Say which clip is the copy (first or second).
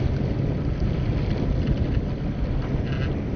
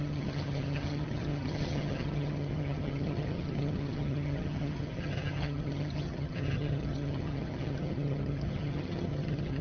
second